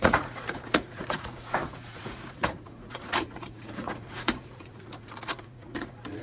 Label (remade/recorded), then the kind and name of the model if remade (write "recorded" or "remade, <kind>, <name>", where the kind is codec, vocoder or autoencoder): remade, vocoder, Vocos